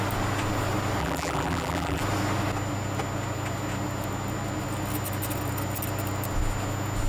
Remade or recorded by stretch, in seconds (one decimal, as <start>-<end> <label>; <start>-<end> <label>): 0.0-1.0 recorded; 1.0-2.0 remade; 2.0-7.1 recorded